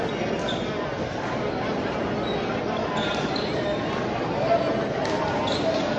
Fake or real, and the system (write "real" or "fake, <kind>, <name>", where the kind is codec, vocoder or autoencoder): real